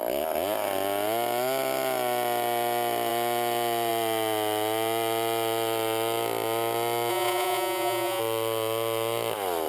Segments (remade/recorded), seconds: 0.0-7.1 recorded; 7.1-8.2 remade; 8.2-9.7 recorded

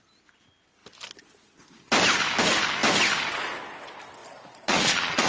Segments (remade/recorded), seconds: 0.0-4.2 recorded; 4.2-5.3 remade

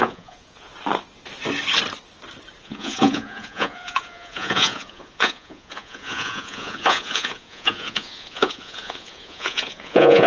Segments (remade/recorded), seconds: 0.0-0.7 remade; 0.7-2.6 recorded; 2.6-10.3 remade

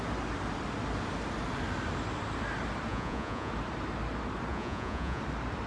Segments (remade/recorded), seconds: 0.0-2.9 recorded; 2.9-3.5 remade; 3.5-4.5 recorded; 4.5-5.2 remade; 5.2-5.7 recorded

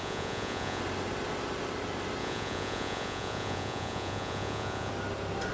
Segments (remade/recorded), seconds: 0.0-0.8 remade; 0.8-2.2 recorded; 2.2-4.9 remade; 4.9-5.5 recorded